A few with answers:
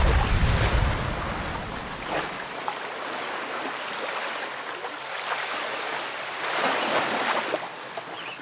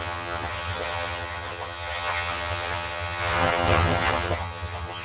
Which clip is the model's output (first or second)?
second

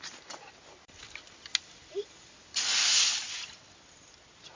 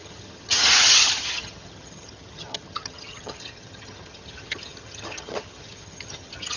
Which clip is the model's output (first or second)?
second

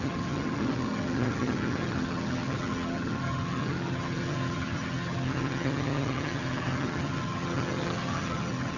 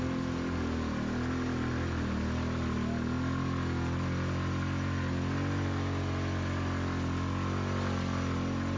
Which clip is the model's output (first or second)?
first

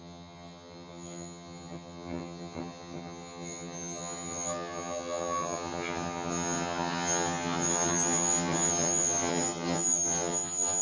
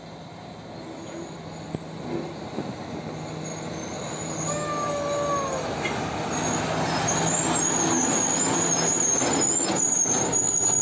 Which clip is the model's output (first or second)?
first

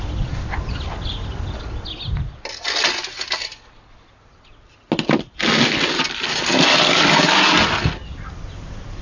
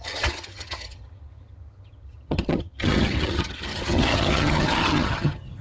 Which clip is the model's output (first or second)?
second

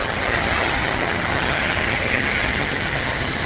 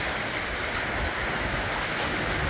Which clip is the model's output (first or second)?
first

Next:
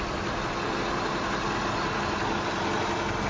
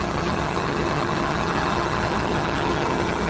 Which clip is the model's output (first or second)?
second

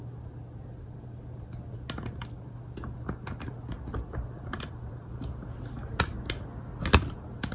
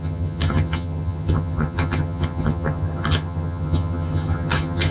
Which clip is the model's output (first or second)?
second